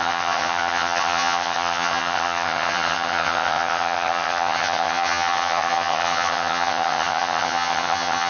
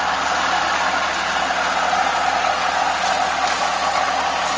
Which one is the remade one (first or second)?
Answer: first